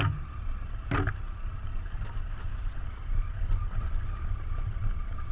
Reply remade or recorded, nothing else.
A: recorded